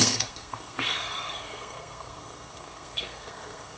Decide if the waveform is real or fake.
fake